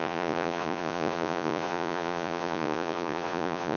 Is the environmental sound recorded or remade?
remade